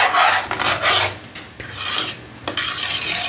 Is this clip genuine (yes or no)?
yes